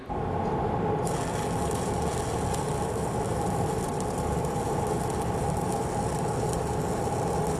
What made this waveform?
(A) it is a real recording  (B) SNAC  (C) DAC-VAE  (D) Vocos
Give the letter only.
A